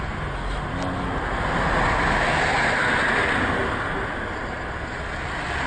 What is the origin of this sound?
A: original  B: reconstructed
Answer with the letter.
A